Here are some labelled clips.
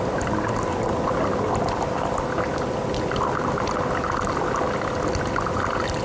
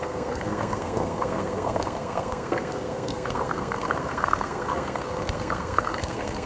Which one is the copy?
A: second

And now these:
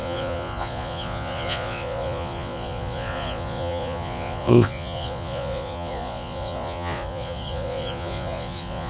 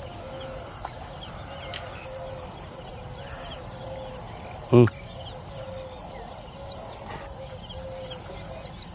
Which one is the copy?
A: first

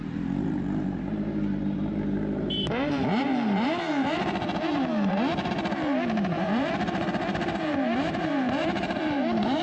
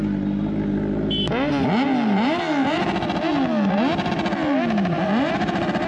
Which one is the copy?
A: first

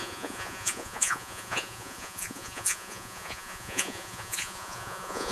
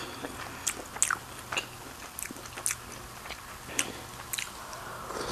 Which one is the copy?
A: first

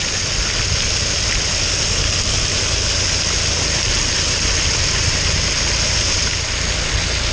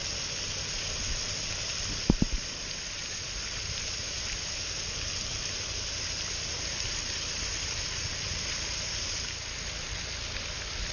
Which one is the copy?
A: second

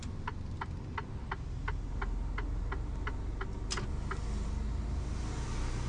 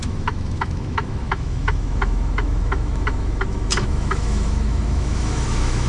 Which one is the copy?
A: second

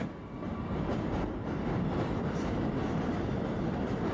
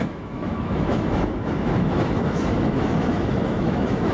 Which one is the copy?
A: second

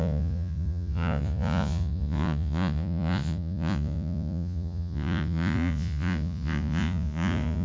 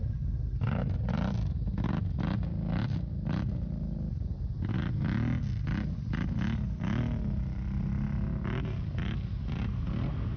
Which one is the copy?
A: first